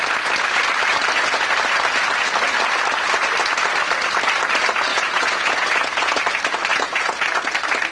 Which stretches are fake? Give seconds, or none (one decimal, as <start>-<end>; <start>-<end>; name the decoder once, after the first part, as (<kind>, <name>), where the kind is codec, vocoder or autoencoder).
4.9-6.2 (vocoder, Vocos); 6.7-7.5

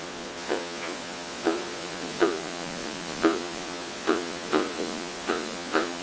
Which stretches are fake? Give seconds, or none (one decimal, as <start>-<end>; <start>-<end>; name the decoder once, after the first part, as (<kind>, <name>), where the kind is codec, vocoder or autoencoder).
0.0-6.0 (vocoder, Vocos)

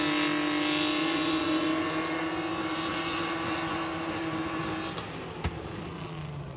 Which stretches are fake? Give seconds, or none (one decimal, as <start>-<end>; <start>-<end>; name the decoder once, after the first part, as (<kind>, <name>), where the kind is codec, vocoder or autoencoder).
1.0-2.3 (vocoder, Vocos); 2.7-4.6

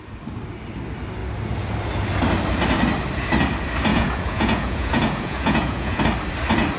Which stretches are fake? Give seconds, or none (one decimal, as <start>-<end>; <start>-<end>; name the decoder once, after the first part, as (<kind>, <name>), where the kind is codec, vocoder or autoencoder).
3.9-6.0 (vocoder, Vocos)

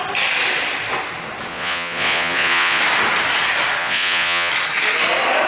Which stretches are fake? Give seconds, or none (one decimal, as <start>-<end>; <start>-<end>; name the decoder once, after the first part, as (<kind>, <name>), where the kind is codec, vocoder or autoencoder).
1.5-2.8 (vocoder, Vocos); 3.8-4.5

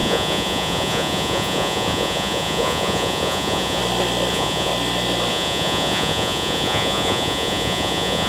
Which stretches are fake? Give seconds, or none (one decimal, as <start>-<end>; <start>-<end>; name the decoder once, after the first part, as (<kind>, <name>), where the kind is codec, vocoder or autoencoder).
0.0-3.8 (vocoder, Vocos); 4.3-4.7; 5.3-8.3

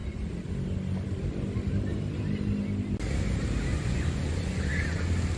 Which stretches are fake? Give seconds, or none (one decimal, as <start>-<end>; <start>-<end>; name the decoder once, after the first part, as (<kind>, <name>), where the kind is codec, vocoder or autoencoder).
3.7-4.7 (vocoder, Vocos)

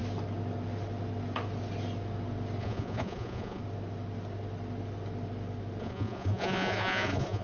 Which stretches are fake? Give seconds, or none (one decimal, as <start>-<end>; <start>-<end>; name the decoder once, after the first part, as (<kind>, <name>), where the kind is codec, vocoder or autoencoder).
2.6-3.6 (vocoder, Vocos); 5.8-7.4